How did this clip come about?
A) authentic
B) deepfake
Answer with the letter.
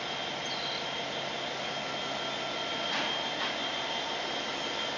A